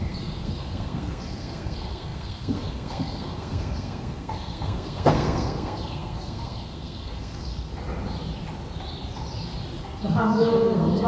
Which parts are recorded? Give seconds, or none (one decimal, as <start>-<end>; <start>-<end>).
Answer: 7.7-9.8